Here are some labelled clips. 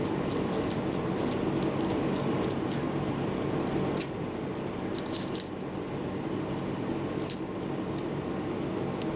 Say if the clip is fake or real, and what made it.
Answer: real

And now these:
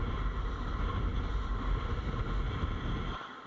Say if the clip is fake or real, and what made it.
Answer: real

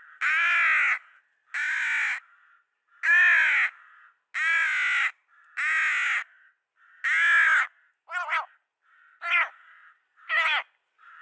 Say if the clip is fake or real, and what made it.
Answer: real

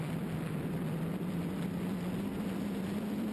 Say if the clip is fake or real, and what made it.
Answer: real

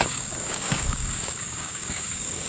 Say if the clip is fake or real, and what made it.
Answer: fake, codec, DAC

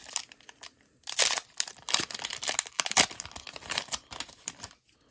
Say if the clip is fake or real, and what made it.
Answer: real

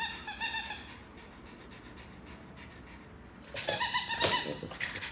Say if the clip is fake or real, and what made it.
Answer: real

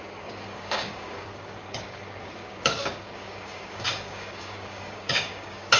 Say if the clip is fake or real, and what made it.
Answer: fake, codec, DAC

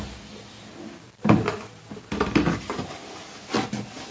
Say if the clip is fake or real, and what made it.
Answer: real